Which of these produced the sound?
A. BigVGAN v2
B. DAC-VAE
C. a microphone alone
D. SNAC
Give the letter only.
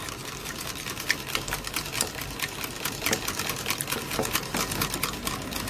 C